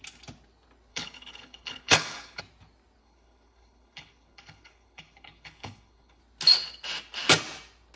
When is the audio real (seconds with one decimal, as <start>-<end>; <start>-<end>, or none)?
0.0-0.9; 2.4-3.0; 6.2-8.0